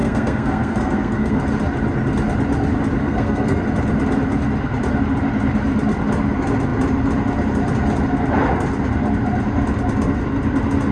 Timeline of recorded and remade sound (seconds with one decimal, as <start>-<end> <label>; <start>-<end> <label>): 0.0-1.4 remade; 1.4-3.0 recorded; 3.0-3.6 remade; 3.6-10.9 recorded